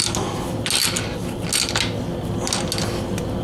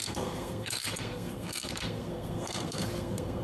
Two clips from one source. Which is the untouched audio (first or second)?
first